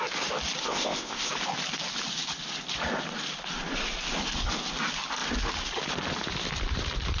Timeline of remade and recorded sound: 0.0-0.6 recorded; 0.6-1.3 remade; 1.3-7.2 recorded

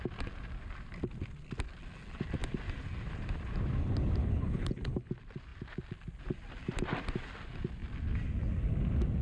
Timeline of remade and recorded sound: 0.0-4.2 recorded; 4.2-5.1 remade; 5.1-9.2 recorded

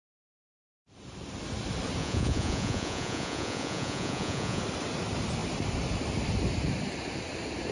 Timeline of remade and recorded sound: 0.0-2.0 recorded; 2.0-4.6 remade; 4.6-7.7 recorded

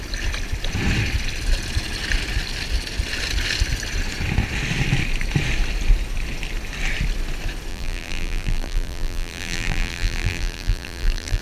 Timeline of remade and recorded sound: 0.0-7.7 recorded; 7.7-11.4 remade

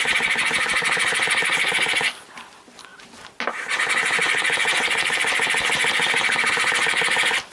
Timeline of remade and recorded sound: 0.0-2.9 remade; 2.9-6.5 recorded; 6.5-7.5 remade